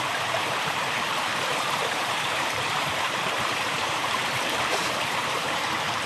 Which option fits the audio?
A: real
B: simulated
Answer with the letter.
B